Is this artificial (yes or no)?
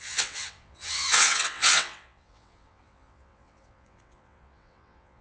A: yes